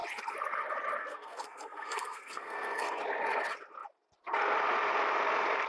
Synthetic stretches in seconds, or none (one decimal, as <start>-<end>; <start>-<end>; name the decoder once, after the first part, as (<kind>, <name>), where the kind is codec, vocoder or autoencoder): 1.0-3.0 (codec, SNAC)